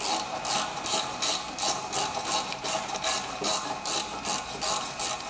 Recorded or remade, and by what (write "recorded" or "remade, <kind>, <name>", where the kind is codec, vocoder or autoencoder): recorded